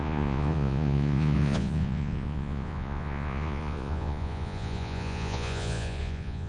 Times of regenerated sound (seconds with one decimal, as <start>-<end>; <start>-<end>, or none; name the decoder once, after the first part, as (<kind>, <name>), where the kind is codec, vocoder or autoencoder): 0.0-6.5 (vocoder, Vocos)